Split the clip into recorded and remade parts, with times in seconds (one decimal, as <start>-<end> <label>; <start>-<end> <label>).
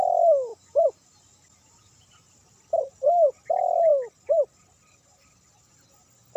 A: 0.0-0.5 recorded; 0.5-3.5 remade; 3.5-3.9 recorded; 3.9-5.7 remade; 5.7-6.4 recorded